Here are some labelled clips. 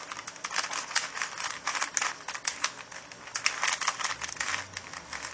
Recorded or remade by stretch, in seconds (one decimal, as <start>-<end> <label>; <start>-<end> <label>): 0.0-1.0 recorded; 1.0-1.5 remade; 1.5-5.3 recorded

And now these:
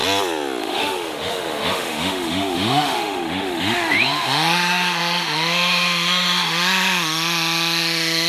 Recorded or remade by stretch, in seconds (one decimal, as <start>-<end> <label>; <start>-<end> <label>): 0.0-0.6 recorded; 0.6-8.3 remade

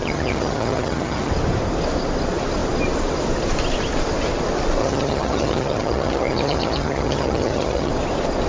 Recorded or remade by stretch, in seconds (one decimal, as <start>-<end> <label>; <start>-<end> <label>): 0.0-1.3 remade; 1.3-4.8 recorded; 4.8-7.9 remade; 7.9-8.5 recorded

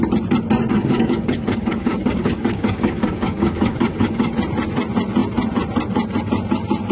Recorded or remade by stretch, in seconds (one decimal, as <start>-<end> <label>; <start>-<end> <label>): 0.0-0.7 recorded; 0.7-4.3 remade; 4.3-6.9 recorded

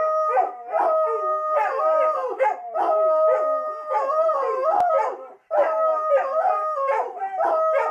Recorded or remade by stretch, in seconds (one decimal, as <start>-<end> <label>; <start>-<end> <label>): 0.0-7.9 recorded

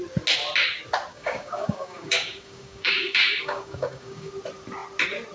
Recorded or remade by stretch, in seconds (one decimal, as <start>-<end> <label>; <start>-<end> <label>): 0.0-1.1 recorded; 1.1-4.3 remade; 4.3-5.3 recorded

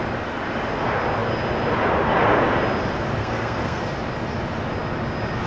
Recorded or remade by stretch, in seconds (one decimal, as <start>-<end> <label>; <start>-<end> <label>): 0.0-3.2 recorded; 3.2-3.8 remade; 3.8-5.5 recorded